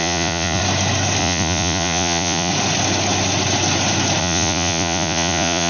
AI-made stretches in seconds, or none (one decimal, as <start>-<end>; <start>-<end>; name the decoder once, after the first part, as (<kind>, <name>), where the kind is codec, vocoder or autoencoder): 0.0-0.6 (vocoder, Vocos); 1.2-2.5; 4.2-5.7